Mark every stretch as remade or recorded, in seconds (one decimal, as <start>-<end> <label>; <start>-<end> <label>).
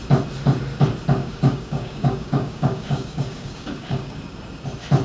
0.0-1.2 recorded; 1.2-4.2 remade; 4.2-5.0 recorded